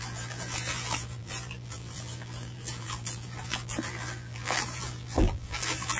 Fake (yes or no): yes